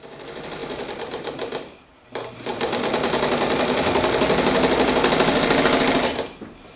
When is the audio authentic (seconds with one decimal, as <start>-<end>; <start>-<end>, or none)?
0.0-6.8